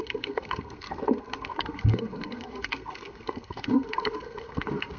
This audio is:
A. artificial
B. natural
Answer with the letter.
A